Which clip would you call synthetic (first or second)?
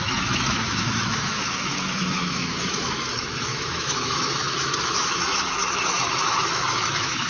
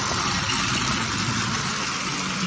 first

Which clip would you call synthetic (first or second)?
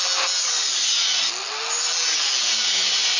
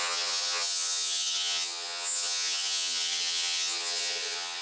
second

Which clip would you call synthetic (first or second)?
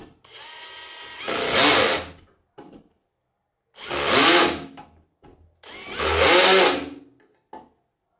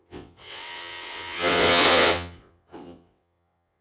second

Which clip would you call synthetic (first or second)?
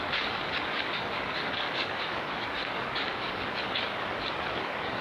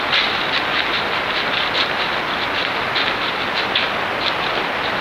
first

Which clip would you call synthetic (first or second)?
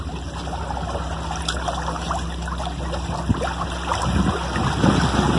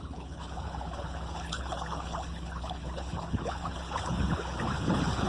second